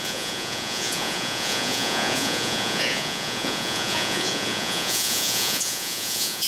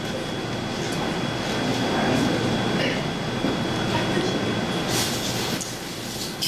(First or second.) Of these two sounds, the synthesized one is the first